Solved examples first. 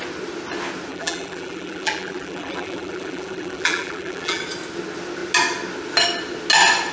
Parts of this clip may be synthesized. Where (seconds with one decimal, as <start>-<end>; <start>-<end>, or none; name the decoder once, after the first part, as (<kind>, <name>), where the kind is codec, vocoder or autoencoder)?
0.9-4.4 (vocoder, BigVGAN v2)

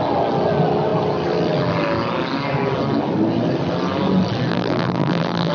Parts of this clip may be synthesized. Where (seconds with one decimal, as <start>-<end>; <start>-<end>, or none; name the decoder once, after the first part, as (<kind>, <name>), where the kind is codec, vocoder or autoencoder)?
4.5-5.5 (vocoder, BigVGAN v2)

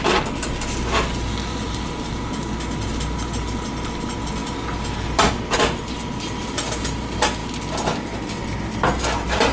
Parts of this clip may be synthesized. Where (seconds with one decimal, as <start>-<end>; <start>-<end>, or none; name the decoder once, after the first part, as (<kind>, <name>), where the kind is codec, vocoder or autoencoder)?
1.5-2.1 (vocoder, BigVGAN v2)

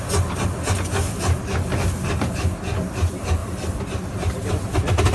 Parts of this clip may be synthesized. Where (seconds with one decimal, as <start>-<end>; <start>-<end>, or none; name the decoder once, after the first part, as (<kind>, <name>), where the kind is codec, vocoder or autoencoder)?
3.4-4.3 (vocoder, BigVGAN v2)

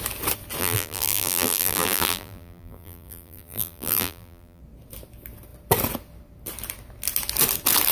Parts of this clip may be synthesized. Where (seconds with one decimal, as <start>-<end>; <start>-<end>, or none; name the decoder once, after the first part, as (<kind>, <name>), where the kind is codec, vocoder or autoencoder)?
0.6-4.6 (vocoder, BigVGAN v2)

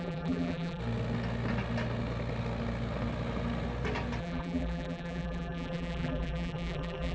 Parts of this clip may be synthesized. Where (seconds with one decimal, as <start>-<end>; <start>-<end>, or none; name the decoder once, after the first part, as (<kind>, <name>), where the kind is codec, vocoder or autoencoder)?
0.0-0.8 (vocoder, BigVGAN v2); 4.2-7.1